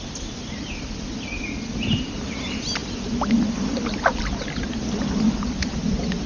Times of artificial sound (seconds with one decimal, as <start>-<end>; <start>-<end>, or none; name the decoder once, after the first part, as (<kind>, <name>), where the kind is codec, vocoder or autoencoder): none